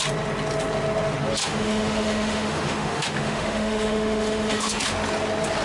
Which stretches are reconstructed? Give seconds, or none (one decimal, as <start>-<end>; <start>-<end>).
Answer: 1.4-4.8